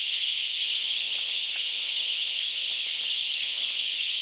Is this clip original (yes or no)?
no